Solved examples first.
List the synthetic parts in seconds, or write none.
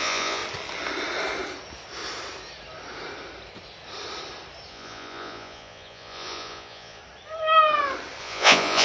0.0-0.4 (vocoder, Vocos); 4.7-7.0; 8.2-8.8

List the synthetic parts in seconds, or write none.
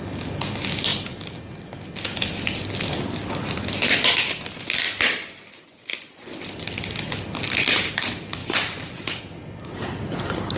5.5-6.3 (vocoder, Vocos); 8.4-9.2